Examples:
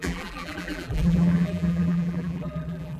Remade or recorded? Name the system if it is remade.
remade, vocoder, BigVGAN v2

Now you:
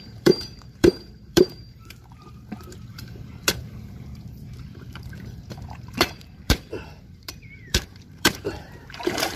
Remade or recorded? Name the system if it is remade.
remade, vocoder, BigVGAN v2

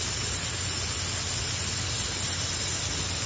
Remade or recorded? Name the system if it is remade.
recorded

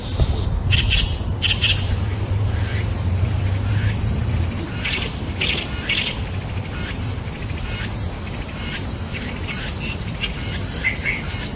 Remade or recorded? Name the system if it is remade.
remade, vocoder, BigVGAN v2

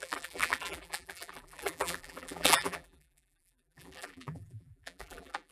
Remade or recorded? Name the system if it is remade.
remade, vocoder, BigVGAN v2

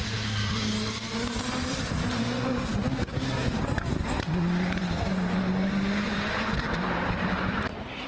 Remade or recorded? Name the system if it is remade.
remade, vocoder, BigVGAN v2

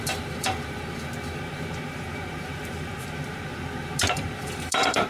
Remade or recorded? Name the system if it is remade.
remade, vocoder, BigVGAN v2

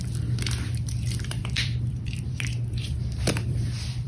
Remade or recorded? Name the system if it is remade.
remade, vocoder, BigVGAN v2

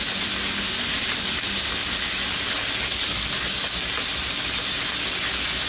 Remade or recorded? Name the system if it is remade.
recorded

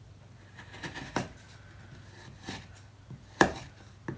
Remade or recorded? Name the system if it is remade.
recorded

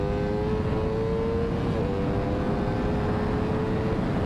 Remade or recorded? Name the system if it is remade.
recorded